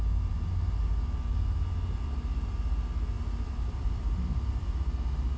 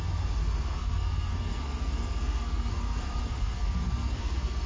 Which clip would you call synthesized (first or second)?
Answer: second